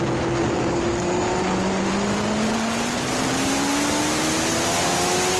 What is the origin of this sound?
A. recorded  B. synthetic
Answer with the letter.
A